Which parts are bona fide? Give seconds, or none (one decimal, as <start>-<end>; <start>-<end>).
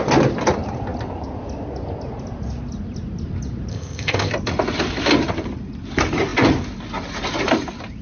0.0-3.7; 4.3-8.0